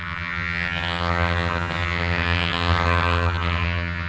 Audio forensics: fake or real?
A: fake